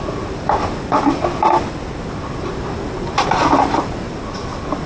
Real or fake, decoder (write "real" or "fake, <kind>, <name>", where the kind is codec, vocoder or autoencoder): real